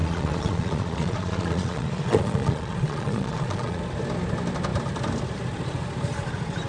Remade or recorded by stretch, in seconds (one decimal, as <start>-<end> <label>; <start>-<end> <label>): 0.0-3.8 remade; 3.8-6.7 recorded